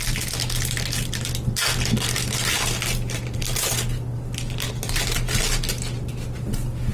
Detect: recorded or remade recorded